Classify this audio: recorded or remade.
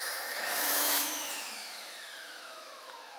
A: remade